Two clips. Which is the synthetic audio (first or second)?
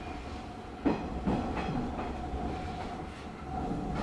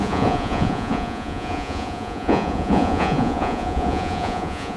second